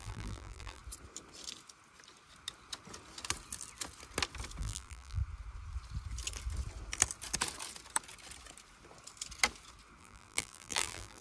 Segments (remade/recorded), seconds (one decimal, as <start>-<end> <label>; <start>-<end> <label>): 0.0-0.8 remade; 0.8-4.6 recorded; 4.6-5.2 remade; 5.2-10.0 recorded; 10.0-11.2 remade